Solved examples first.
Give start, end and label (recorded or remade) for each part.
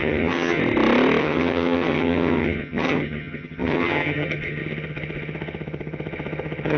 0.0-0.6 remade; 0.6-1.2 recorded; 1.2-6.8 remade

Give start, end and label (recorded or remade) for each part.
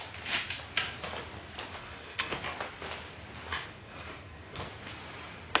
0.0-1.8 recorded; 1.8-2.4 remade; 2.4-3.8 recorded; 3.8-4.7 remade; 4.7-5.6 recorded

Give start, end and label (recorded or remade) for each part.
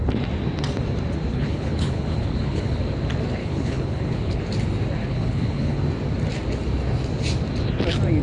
0.0-1.3 recorded; 1.3-2.8 remade; 2.8-3.4 recorded; 3.4-4.4 remade; 4.4-5.0 recorded; 5.0-5.8 remade; 5.8-8.2 recorded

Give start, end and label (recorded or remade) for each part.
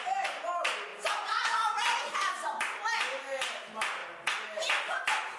0.0-5.4 recorded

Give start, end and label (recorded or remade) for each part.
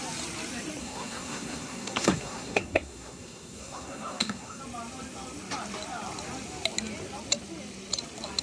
0.0-0.8 recorded; 0.8-4.6 remade; 4.6-8.4 recorded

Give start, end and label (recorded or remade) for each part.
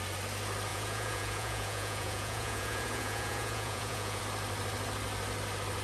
0.0-0.7 recorded; 0.7-4.2 remade; 4.2-5.8 recorded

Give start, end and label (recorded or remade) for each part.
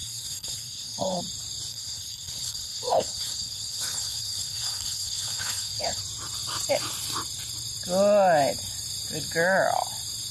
0.0-1.2 remade; 1.2-1.7 recorded; 1.7-6.0 remade; 6.0-10.3 recorded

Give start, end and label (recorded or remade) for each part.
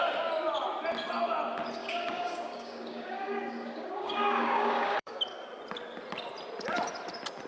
0.0-1.8 recorded; 1.8-5.2 remade; 5.2-7.5 recorded